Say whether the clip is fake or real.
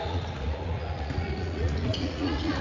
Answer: fake